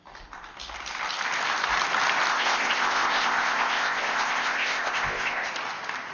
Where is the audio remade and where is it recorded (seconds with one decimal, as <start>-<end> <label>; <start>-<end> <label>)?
0.0-2.3 recorded; 2.3-5.5 remade; 5.5-6.1 recorded